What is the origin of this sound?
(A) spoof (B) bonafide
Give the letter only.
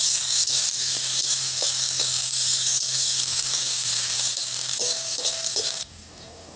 A